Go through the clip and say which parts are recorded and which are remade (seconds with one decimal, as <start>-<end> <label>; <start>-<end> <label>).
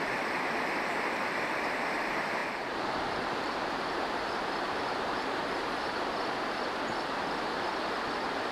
0.0-2.4 recorded; 2.4-5.4 remade; 5.4-8.5 recorded